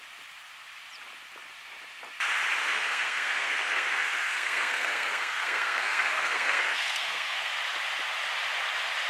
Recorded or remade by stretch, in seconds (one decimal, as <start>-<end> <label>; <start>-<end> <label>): 0.0-2.6 recorded; 2.6-7.5 remade; 7.5-9.1 recorded